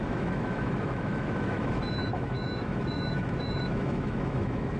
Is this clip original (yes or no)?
no